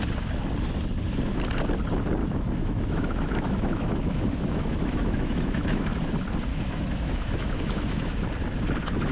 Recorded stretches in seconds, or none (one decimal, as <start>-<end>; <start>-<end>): 0.0-2.2; 5.9-6.5; 8.2-9.1